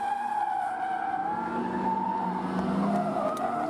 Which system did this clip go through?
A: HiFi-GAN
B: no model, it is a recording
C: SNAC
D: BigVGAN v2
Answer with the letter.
B